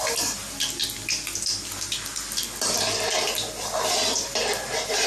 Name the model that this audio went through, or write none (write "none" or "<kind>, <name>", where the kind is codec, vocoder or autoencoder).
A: none